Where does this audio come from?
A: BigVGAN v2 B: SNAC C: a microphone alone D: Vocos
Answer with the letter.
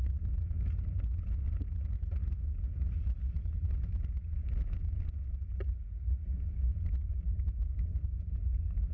C